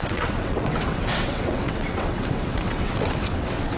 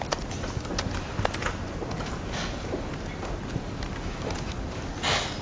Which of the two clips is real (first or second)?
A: second